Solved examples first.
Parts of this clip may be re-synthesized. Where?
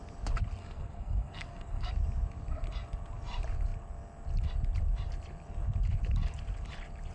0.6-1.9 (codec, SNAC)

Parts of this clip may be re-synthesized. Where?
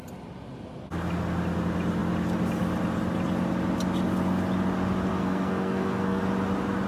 5.1-6.2 (codec, SNAC)